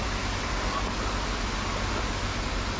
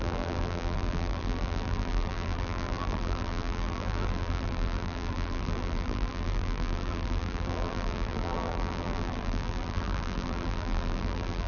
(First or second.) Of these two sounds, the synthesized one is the second